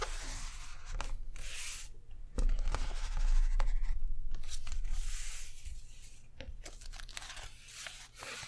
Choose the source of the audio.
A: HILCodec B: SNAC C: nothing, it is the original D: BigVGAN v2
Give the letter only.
C